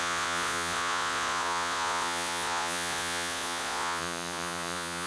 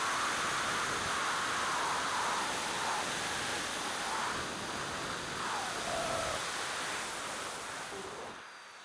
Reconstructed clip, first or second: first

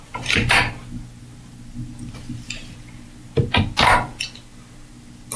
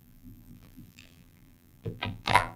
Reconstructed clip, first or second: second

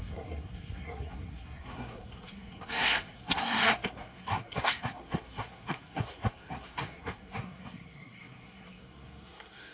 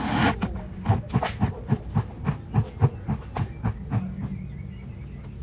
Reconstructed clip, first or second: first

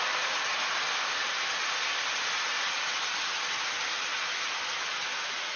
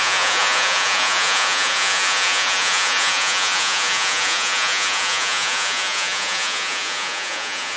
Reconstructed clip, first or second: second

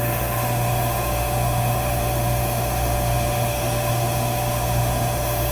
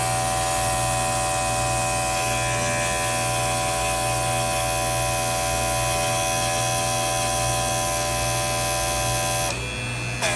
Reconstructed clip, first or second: first